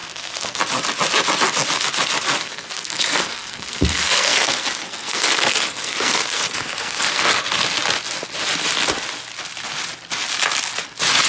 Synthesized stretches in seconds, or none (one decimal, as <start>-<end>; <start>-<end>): 0.0-0.6; 2.4-7.5